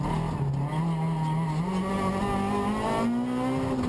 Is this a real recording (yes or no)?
yes